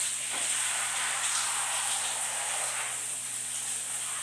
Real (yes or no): yes